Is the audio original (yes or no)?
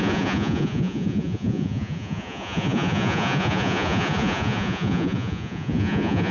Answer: no